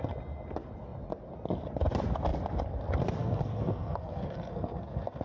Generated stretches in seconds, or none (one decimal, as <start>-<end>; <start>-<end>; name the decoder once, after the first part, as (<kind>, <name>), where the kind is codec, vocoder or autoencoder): 3.2-5.2 (codec, SNAC)